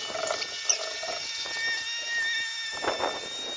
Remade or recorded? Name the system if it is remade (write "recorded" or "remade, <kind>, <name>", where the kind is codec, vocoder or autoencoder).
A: recorded